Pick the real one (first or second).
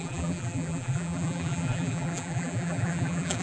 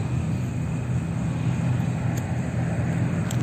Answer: second